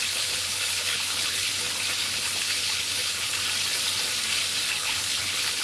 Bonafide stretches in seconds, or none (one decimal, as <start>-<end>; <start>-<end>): 1.5-2.0; 3.4-4.7